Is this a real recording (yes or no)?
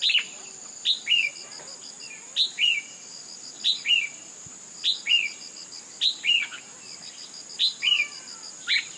yes